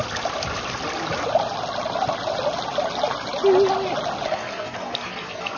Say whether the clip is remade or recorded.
recorded